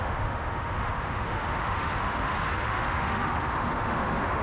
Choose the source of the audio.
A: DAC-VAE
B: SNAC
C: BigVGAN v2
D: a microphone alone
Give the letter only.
A